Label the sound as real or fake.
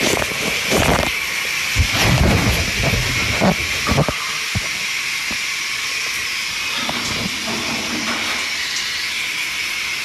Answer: real